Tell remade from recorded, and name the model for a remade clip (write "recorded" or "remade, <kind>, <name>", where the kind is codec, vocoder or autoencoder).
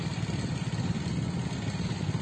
recorded